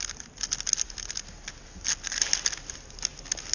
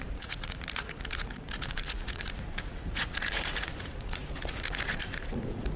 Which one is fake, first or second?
second